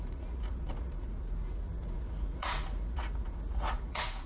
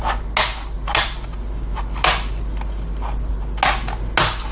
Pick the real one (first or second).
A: second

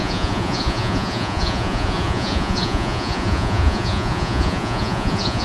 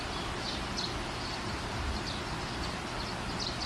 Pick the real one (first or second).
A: second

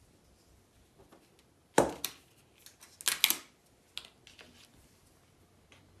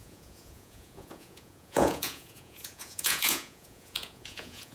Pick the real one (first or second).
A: first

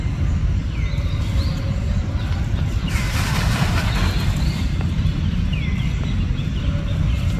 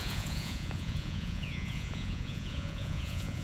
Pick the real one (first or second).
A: first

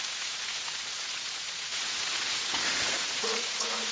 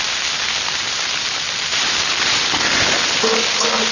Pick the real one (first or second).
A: second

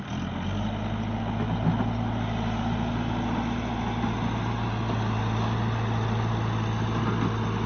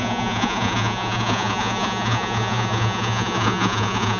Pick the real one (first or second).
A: first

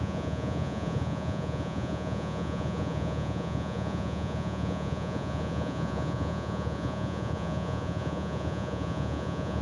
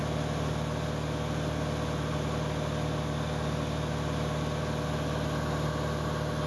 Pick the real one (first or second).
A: second